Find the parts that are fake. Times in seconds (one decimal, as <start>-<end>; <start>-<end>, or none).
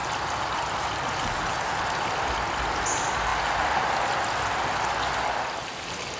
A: none